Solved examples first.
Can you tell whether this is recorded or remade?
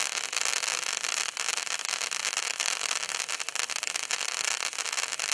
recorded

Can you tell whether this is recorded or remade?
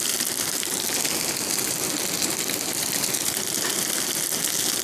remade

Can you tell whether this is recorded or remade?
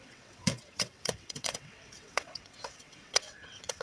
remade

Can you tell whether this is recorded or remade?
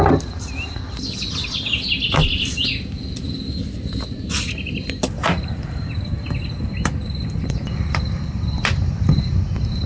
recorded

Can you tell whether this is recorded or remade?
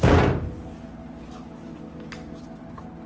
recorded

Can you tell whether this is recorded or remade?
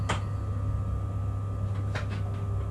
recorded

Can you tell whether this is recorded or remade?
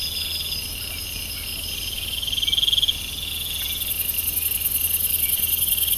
recorded